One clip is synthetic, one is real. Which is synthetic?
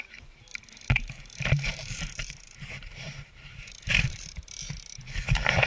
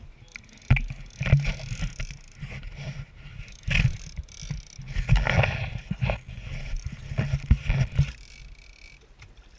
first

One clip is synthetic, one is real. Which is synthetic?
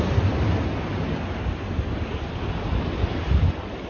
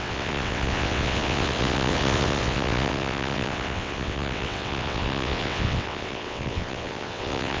second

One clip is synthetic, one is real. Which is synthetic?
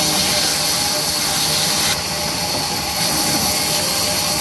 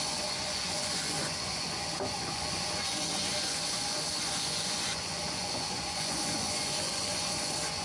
second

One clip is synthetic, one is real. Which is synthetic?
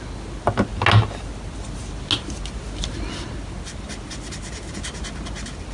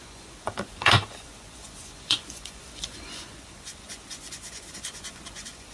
second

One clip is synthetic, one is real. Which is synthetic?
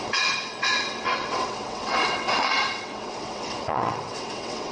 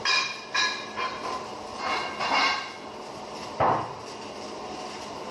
first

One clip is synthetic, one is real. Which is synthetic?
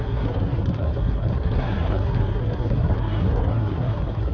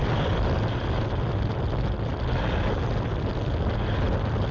first